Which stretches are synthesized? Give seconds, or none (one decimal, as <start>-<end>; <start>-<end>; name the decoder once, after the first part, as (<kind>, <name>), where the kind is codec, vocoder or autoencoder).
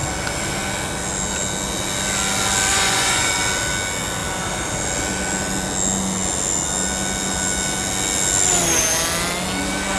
2.7-3.3 (vocoder, Vocos)